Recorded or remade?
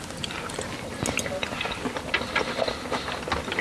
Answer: recorded